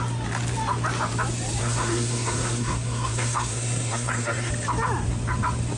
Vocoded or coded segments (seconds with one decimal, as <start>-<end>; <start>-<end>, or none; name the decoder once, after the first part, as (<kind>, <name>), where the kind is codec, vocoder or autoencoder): 1.6-4.5 (codec, SNAC)